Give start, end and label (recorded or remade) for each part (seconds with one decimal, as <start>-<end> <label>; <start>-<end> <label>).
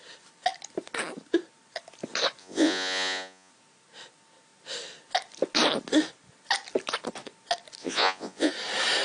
0.0-2.4 recorded; 2.4-3.5 remade; 3.5-7.8 recorded; 7.8-8.5 remade; 8.5-9.0 recorded